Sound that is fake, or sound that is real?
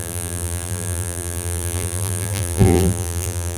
fake